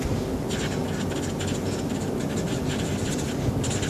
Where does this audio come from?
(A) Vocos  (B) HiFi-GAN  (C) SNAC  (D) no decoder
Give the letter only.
D